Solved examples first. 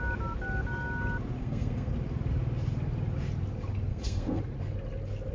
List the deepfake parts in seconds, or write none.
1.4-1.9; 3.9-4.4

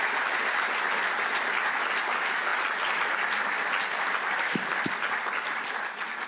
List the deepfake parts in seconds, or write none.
none